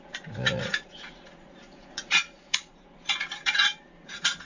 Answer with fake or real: fake